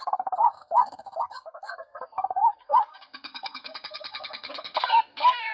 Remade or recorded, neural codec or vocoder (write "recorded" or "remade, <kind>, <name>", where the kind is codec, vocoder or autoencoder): remade, codec, SNAC